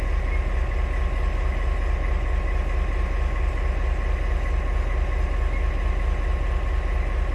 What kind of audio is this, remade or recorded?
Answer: recorded